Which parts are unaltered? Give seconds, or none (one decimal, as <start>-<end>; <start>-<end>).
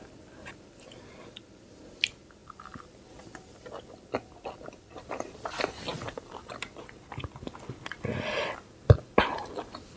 0.0-10.0